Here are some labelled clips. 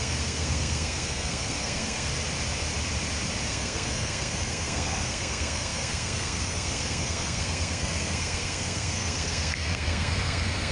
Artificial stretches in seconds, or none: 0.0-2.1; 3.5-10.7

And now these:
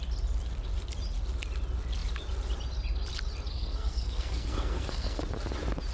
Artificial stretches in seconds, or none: 3.5-5.2

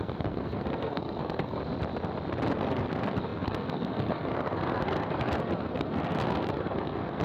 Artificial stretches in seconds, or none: 0.0-1.6; 2.5-7.2

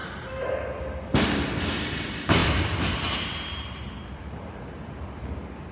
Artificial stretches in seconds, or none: none

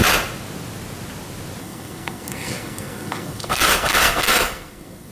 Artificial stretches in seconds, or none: 1.6-5.1

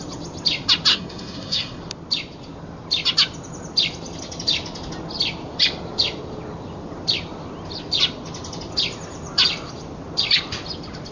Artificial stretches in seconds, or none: 0.9-1.8

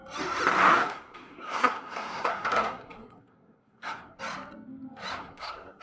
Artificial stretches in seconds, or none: 0.7-4.2; 5.2-5.8

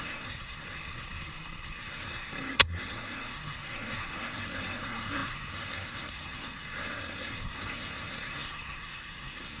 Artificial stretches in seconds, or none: 0.0-9.6